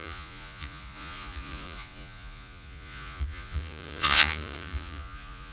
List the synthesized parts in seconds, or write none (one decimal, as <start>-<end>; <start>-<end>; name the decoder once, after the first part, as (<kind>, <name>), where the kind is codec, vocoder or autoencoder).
0.0-5.5 (vocoder, Vocos)

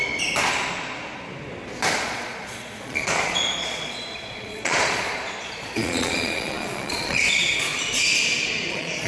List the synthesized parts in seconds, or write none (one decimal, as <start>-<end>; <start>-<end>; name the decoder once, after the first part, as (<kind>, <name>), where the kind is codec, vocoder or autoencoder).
2.0-7.7 (vocoder, Vocos); 8.7-9.1

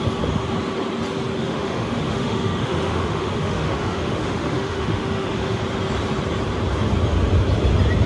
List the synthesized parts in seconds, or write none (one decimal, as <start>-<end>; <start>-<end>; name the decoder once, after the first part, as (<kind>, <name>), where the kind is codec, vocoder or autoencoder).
1.4-5.6 (autoencoder, DAC-VAE)

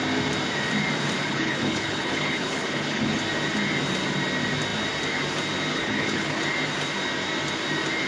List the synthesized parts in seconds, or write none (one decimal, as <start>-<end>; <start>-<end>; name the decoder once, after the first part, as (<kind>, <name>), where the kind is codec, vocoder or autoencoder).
1.2-3.2 (codec, HILCodec); 5.7-6.4

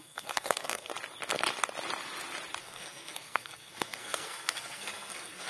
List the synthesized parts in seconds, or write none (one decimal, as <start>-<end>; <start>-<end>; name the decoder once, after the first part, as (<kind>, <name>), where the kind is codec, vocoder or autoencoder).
0.0-0.9 (codec, SNAC); 2.6-5.5

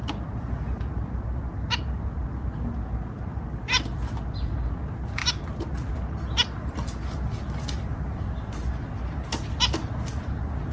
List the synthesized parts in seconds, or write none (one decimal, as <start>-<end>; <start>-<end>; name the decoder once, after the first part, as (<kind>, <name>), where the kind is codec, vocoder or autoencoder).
none

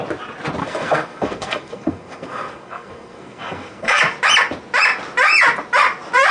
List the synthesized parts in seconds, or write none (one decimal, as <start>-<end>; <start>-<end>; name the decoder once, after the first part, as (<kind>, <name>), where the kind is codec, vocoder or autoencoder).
0.6-4.0 (codec, SNAC)

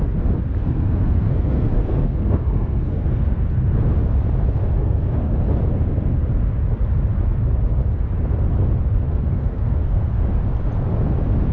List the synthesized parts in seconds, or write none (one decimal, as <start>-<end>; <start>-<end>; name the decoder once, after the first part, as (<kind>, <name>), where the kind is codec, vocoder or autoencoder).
0.6-3.4 (codec, SNAC); 4.6-5.4; 8.9-10.2